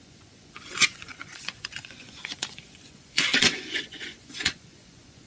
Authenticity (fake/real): fake